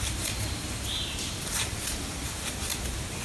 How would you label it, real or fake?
fake